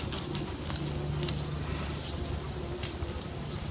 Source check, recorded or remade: recorded